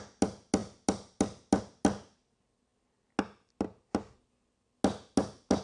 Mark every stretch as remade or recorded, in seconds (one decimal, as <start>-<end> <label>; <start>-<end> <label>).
0.0-5.6 recorded